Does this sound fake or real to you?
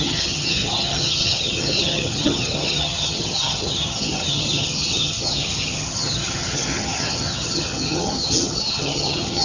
fake